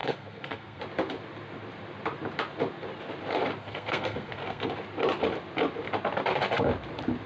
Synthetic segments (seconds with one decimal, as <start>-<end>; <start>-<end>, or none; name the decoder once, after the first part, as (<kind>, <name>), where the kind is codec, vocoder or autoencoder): 0.0-0.8 (codec, SNAC); 3.6-4.7